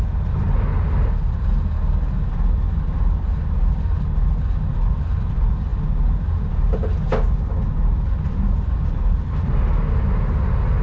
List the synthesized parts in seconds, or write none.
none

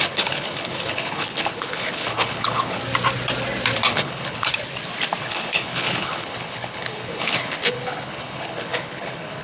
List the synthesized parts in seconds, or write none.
0.0-2.8 (codec, HILCodec); 3.9-4.5; 5.2-9.4

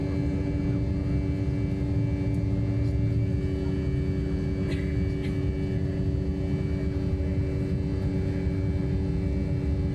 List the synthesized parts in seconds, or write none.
none